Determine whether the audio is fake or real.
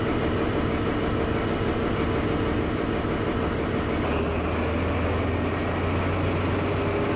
real